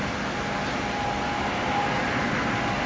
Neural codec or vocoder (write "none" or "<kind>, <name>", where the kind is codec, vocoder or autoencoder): none